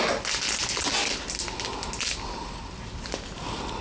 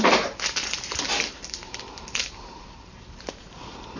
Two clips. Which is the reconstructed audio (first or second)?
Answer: second